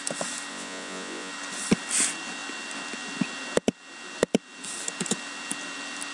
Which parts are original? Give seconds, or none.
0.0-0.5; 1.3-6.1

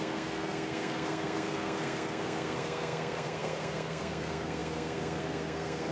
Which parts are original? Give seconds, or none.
none

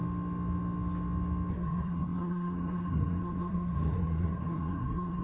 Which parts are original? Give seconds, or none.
0.0-1.5

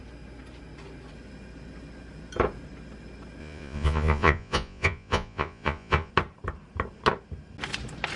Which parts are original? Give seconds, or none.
0.0-3.4; 6.1-8.2